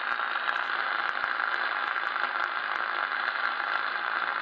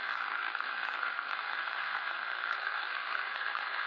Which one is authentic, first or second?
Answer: first